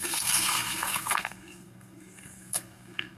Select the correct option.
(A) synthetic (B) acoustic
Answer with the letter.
A